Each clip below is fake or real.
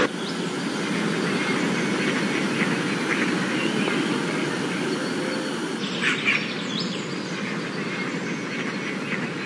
real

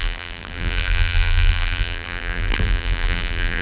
fake